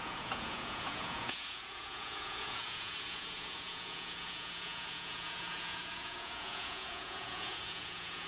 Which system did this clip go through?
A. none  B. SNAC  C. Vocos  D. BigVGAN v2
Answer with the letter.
C